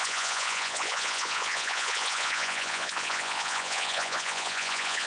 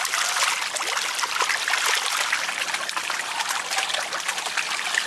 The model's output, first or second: first